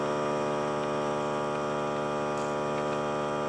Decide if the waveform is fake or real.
real